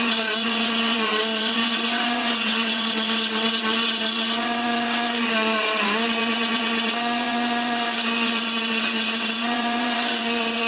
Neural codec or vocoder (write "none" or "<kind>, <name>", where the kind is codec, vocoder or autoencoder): vocoder, WaveNeXt